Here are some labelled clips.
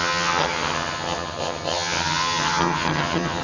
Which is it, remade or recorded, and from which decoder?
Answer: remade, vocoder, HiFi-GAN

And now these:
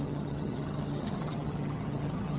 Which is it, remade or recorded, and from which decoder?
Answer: remade, vocoder, HiFi-GAN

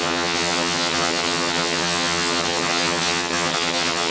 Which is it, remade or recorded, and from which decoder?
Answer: remade, vocoder, HiFi-GAN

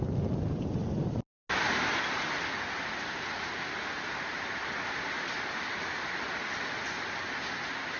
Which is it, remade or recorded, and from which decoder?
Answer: recorded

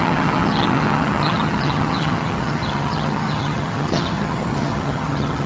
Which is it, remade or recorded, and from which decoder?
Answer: remade, vocoder, HiFi-GAN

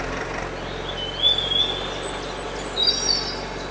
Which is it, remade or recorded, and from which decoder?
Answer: recorded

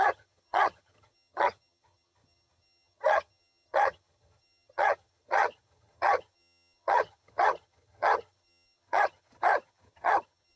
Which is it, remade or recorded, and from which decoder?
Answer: remade, vocoder, HiFi-GAN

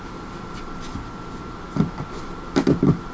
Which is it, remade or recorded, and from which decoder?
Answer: recorded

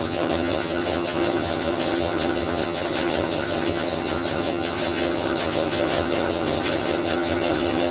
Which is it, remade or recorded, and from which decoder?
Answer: remade, vocoder, HiFi-GAN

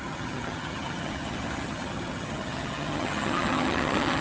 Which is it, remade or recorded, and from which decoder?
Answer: remade, vocoder, HiFi-GAN